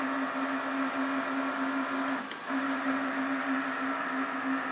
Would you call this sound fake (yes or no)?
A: no